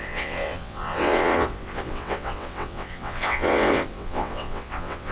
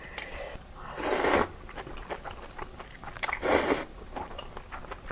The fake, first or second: first